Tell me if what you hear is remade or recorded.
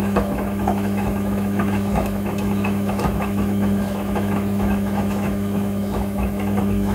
remade